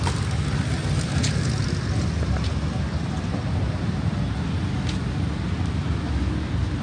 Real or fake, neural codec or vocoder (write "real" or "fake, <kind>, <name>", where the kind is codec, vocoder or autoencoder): real